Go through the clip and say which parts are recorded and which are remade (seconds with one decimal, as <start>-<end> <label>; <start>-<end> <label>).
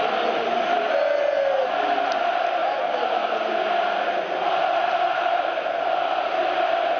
0.0-7.0 recorded